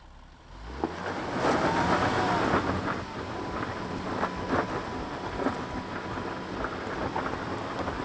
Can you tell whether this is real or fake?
real